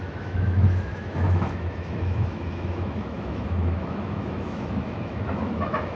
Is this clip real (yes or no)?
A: no